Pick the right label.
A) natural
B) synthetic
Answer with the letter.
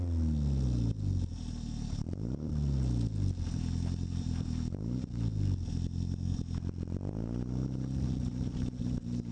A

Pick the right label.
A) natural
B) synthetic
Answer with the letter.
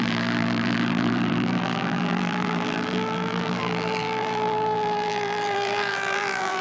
B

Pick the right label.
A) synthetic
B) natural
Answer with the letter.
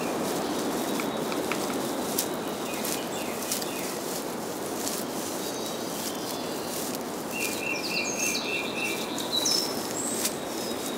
B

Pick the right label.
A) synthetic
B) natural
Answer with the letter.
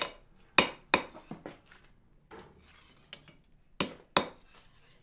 B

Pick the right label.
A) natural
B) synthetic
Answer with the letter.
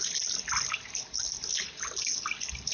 A